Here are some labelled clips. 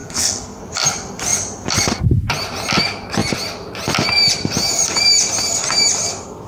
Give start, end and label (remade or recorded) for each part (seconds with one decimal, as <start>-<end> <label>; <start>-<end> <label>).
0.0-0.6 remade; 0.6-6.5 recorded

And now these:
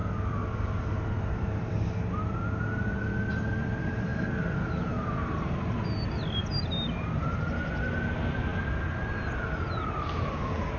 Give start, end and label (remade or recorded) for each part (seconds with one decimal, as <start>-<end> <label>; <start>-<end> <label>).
0.0-10.8 recorded

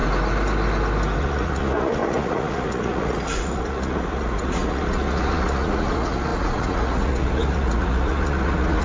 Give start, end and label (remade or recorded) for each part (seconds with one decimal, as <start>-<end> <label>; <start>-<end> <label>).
0.0-1.2 recorded; 1.2-8.8 remade

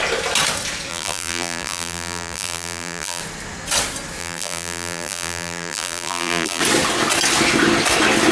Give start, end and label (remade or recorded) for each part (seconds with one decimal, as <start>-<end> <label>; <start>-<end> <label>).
0.0-0.9 recorded; 0.9-3.2 remade; 3.2-4.2 recorded; 4.2-6.6 remade; 6.6-8.3 recorded

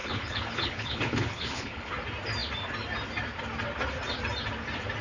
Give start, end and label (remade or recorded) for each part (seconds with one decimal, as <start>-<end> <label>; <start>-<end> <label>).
0.0-1.9 remade; 1.9-5.0 recorded

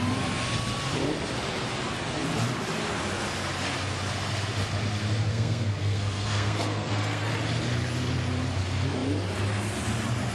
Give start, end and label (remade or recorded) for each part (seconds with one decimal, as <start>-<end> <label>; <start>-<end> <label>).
0.0-5.3 recorded; 5.3-7.3 remade; 7.3-10.3 recorded

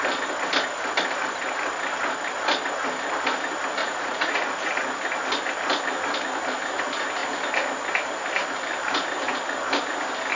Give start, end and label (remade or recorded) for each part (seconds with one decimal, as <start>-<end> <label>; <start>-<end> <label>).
0.0-3.8 recorded; 3.8-4.7 remade; 4.7-10.4 recorded